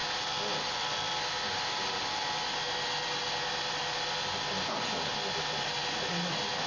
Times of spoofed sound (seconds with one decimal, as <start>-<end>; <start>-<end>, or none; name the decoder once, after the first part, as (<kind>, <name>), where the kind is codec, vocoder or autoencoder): none